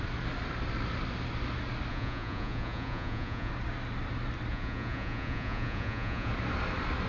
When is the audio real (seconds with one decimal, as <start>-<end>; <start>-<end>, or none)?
0.0-1.9; 3.5-4.5; 6.3-7.1